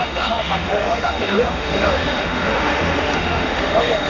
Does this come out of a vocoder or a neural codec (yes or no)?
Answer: yes